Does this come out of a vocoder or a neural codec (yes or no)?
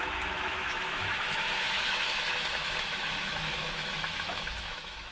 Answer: yes